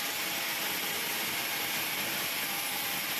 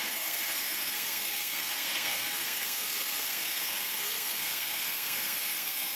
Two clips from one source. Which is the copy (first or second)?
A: second